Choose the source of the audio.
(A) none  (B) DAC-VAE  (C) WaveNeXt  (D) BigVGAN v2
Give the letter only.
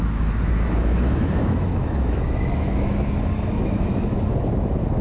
B